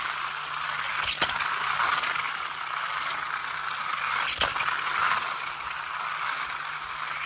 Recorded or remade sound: recorded